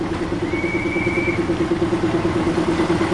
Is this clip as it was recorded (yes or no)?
yes